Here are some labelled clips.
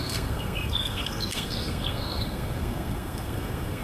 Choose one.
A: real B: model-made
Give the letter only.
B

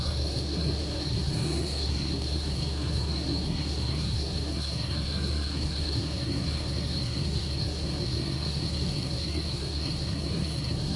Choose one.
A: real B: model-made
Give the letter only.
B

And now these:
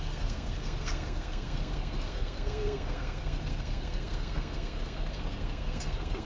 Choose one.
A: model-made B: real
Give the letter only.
A